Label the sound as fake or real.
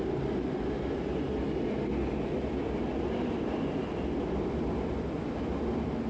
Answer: real